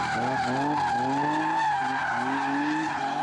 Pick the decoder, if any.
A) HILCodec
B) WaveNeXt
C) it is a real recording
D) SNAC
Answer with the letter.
C